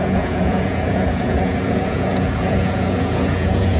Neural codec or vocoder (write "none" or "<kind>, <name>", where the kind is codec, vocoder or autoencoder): vocoder, Vocos